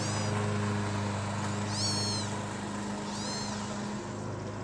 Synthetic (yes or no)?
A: no